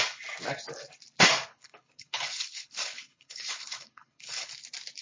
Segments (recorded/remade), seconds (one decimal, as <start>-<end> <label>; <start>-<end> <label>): 0.0-1.5 recorded; 1.5-4.5 remade; 4.5-5.0 recorded